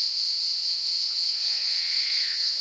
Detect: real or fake fake